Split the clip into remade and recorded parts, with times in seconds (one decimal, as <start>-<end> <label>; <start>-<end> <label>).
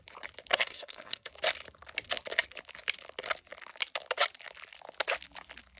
0.0-0.5 recorded; 0.5-1.3 remade; 1.3-5.8 recorded